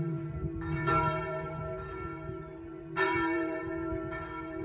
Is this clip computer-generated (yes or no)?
yes